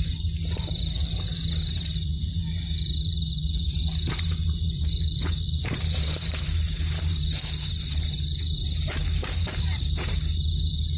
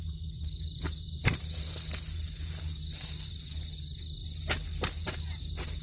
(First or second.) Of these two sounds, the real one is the second